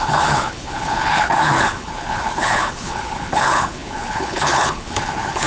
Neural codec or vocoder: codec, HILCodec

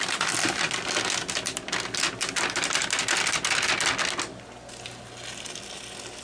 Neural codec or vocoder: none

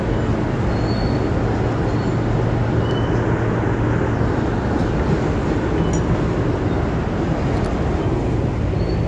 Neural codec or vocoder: none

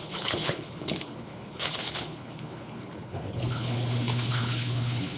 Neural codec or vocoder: codec, HILCodec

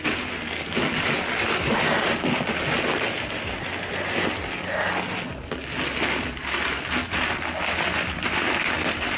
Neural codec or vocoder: none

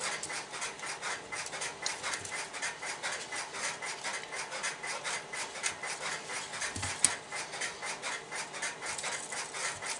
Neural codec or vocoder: none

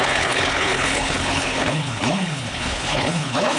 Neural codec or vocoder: codec, HILCodec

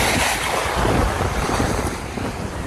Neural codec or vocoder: none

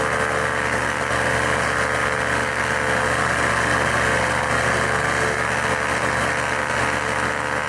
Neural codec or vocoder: none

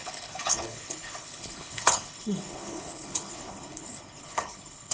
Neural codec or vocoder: codec, HILCodec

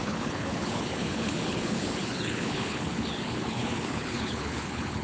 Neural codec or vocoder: codec, HILCodec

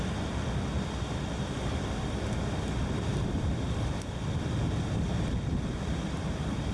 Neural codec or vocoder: none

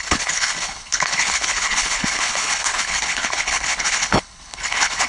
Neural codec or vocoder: codec, HILCodec